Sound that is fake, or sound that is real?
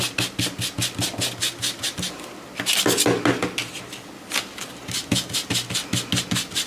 real